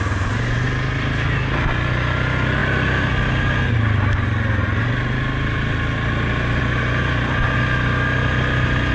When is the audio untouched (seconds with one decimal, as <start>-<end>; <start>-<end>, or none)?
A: 0.0-8.9